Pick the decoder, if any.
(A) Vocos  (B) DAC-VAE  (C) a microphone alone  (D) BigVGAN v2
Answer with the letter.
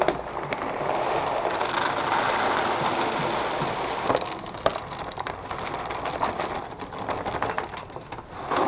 C